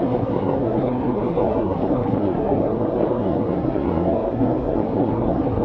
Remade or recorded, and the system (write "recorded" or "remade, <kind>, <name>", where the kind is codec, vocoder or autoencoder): remade, codec, SNAC